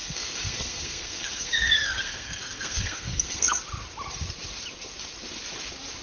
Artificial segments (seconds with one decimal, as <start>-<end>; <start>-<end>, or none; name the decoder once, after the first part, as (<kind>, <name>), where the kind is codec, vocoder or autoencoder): 0.0-3.6 (codec, SNAC)